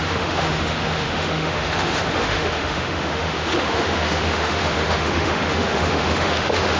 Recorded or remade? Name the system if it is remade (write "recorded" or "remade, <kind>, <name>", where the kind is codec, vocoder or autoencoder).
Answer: remade, autoencoder, DAC-VAE